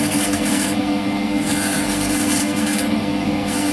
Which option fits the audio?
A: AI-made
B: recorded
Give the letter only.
A